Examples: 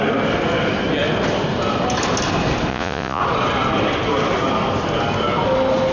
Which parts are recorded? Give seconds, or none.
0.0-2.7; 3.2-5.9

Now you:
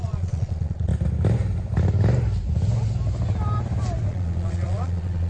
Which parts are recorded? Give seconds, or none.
0.9-4.1

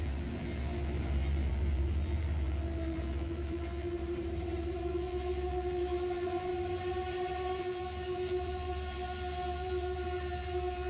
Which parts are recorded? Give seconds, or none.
4.0-4.8; 6.5-7.6

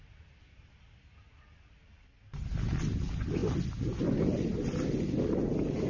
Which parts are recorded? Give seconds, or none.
0.0-5.9